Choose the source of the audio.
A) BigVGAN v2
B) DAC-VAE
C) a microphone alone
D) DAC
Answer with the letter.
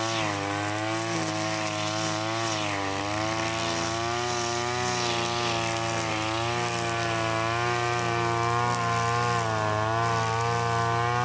C